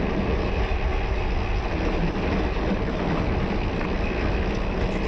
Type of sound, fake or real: real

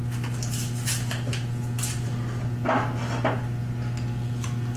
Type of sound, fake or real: real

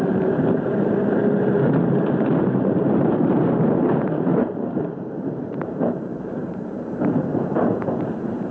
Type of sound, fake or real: fake